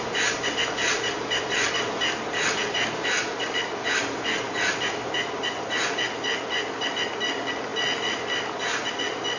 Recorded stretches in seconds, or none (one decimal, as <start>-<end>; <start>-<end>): 0.0-9.4